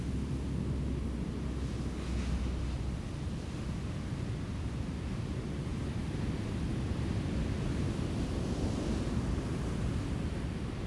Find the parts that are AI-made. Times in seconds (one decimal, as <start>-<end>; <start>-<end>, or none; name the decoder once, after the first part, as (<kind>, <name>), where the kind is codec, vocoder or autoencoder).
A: none